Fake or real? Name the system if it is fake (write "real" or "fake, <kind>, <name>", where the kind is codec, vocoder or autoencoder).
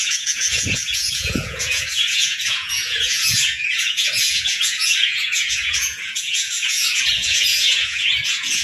fake, vocoder, Vocos